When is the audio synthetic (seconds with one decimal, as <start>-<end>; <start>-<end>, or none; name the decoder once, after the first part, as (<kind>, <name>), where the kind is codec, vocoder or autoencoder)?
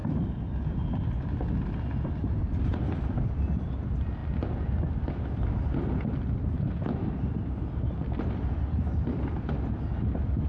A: 2.1-4.2 (vocoder, BigVGAN v2); 8.2-10.5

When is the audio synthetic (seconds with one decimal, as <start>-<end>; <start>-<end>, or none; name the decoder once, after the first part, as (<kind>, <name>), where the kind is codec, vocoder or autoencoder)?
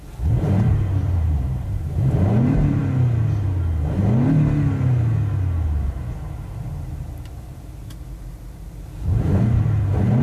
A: 0.0-2.8 (vocoder, BigVGAN v2); 7.9-10.2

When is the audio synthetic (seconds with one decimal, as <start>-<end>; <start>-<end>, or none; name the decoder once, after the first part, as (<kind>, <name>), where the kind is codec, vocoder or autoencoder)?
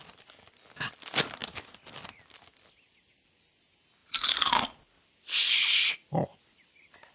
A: none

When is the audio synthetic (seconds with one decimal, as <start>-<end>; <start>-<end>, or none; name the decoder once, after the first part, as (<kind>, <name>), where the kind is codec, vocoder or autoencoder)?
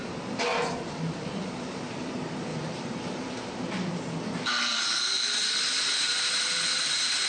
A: 0.5-2.1 (vocoder, BigVGAN v2); 2.5-3.6; 4.7-5.6